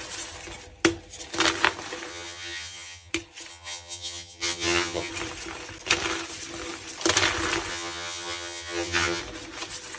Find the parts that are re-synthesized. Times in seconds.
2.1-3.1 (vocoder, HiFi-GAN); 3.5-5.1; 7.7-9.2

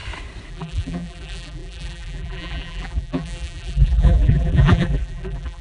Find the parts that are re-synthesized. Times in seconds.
0.5-5.6 (vocoder, BigVGAN v2)

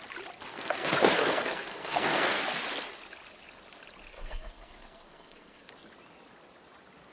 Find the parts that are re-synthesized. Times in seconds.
0.5-2.4 (codec, SNAC); 4.1-5.7

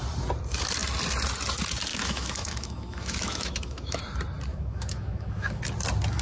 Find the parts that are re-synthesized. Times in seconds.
1.9-4.0 (autoencoder, DAC-VAE); 4.5-5.6